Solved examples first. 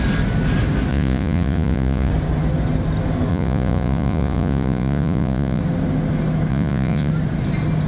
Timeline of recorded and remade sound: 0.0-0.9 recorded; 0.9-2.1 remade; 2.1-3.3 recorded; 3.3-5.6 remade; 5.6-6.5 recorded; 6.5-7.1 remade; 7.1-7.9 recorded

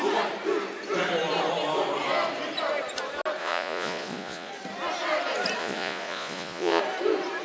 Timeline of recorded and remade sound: 0.0-3.4 recorded; 3.4-4.5 remade; 4.5-5.6 recorded; 5.6-6.8 remade; 6.8-7.4 recorded